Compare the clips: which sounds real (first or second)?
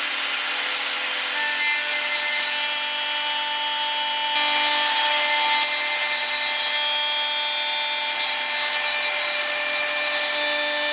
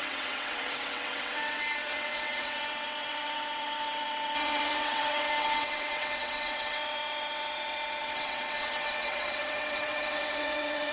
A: first